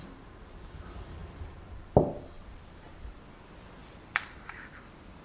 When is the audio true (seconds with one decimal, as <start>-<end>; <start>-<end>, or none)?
0.0-1.2; 3.2-3.8